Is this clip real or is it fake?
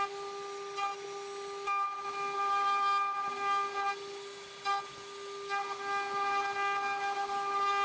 real